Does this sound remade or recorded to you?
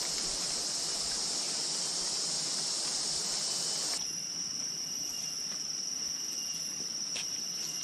recorded